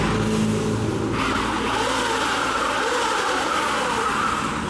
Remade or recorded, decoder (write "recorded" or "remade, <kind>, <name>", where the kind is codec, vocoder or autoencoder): recorded